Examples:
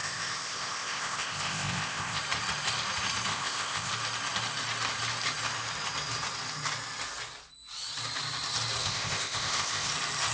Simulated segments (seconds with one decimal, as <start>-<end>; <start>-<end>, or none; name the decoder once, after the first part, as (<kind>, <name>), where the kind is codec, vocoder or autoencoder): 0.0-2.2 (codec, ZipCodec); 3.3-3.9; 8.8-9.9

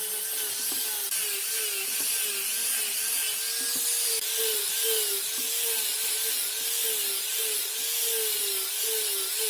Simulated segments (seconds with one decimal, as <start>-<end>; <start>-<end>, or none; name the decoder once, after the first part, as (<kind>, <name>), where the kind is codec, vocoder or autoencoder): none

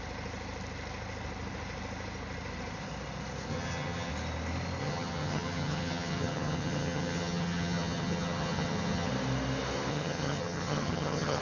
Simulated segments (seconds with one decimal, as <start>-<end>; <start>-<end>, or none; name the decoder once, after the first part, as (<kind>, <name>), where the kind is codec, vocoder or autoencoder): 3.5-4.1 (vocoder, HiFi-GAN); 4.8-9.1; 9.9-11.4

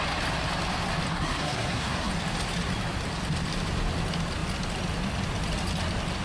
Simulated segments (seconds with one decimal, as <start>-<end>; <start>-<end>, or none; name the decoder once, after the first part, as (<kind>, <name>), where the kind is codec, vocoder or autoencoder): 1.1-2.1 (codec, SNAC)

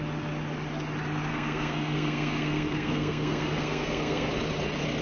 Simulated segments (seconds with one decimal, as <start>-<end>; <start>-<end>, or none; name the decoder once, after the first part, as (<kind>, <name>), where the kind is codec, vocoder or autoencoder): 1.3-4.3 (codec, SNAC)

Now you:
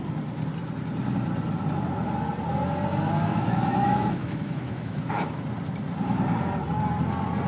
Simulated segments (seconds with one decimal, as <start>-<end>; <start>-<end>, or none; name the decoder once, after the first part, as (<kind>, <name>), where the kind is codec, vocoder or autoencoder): 3.3-5.4 (autoencoder, DAC-VAE)

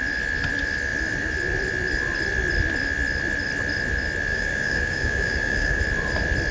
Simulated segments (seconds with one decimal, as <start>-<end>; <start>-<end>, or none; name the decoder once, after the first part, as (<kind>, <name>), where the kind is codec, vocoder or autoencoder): 4.3-5.8 (codec, DAC)

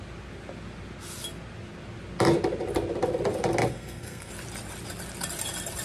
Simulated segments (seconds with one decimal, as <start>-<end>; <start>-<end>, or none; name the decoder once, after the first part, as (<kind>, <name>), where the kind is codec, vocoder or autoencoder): 3.7-4.3 (codec, SNAC)